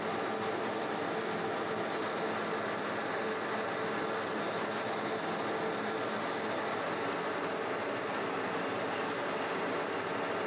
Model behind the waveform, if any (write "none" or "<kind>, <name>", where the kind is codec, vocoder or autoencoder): none